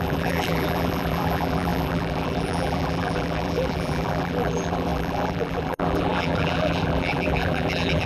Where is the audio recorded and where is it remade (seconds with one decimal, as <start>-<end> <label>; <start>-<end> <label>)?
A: 0.0-8.1 remade